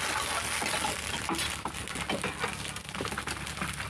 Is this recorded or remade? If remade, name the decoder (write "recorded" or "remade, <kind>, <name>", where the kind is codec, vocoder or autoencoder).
recorded